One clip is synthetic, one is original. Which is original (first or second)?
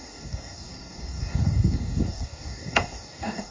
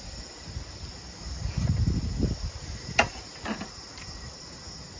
second